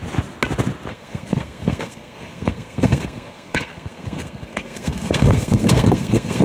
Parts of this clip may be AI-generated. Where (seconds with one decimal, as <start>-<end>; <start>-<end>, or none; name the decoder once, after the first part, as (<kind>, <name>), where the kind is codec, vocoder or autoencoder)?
0.9-6.4 (codec, SNAC)